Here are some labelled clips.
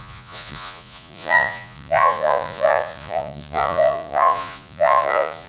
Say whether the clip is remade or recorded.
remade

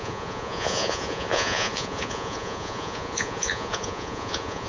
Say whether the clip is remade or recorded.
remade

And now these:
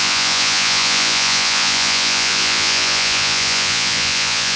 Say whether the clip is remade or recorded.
remade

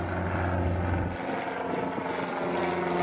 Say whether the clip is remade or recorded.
recorded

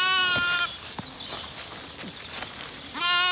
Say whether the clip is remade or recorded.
recorded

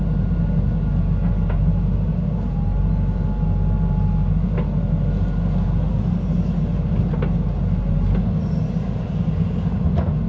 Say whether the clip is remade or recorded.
recorded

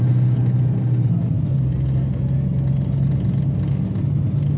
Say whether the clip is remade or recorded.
recorded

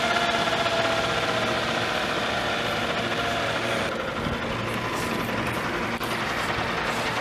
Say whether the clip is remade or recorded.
recorded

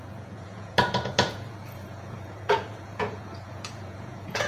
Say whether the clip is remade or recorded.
remade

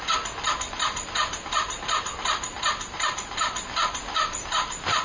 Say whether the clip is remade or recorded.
recorded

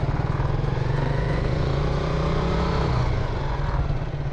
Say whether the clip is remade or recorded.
remade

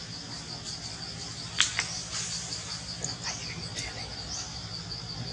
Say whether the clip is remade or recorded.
recorded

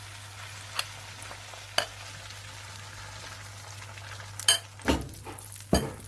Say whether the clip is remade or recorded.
recorded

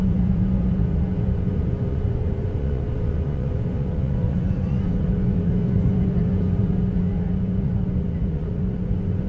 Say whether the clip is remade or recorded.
remade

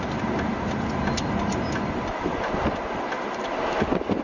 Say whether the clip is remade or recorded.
recorded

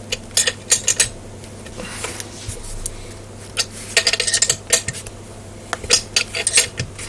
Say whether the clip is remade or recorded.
recorded